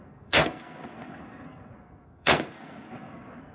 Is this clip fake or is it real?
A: fake